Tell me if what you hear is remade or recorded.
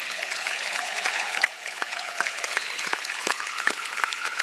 remade